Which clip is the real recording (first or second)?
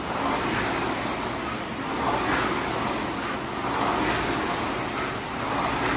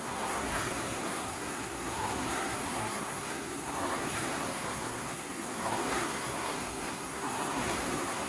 first